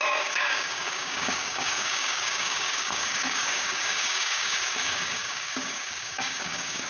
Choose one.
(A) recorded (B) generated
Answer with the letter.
B